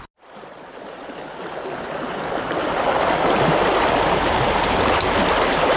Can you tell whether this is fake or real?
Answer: real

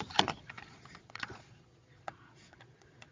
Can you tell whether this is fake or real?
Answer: fake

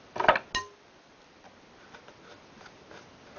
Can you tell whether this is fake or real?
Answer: real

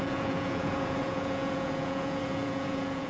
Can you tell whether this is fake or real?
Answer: fake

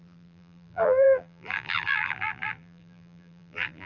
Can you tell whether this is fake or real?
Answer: fake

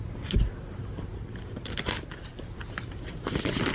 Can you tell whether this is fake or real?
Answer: real